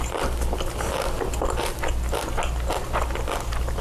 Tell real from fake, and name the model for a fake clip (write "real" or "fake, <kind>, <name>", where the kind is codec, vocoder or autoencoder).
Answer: real